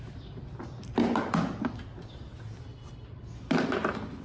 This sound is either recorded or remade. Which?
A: recorded